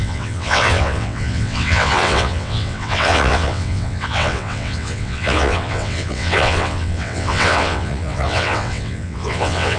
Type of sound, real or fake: fake